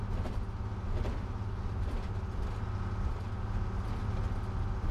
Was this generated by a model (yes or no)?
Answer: no